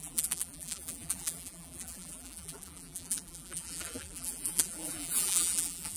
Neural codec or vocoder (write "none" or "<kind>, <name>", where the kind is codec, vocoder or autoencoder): vocoder, BigVGAN v2